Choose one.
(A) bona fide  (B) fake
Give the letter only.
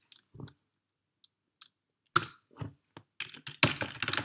A